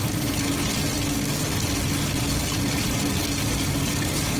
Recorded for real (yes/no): yes